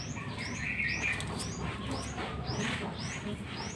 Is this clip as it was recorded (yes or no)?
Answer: yes